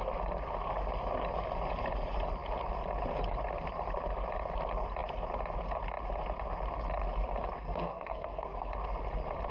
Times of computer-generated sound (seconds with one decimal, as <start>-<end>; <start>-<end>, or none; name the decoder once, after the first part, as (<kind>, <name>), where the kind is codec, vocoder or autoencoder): 7.6-8.7 (codec, SNAC)